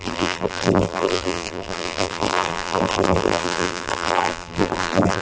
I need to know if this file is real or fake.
fake